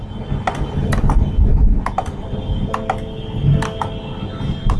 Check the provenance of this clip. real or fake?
real